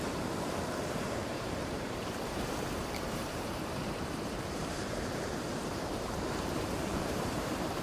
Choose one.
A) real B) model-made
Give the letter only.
B